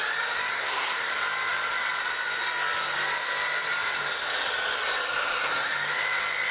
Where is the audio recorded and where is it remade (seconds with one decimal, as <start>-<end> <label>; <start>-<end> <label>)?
0.0-0.5 recorded; 0.5-1.1 remade; 1.1-6.5 recorded